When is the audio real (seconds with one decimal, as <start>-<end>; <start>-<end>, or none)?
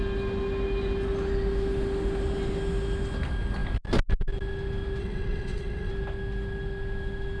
0.0-5.0; 5.9-7.4